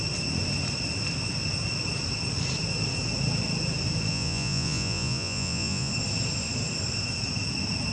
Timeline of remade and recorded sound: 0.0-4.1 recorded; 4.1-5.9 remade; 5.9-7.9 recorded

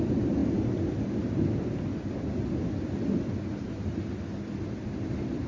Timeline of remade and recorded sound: 0.0-5.5 recorded

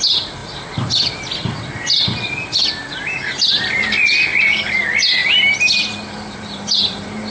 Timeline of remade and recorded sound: 0.0-7.3 recorded

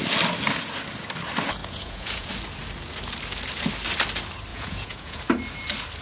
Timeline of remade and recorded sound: 0.0-1.6 recorded; 1.6-2.3 remade; 2.3-4.5 recorded; 4.5-5.2 remade; 5.2-6.0 recorded

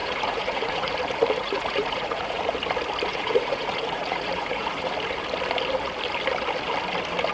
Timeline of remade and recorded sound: 0.0-0.9 remade; 0.9-1.4 recorded; 1.4-2.5 remade; 2.5-3.1 recorded; 3.1-4.9 remade; 4.9-7.3 recorded